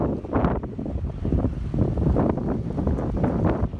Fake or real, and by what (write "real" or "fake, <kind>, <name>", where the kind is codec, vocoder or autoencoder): real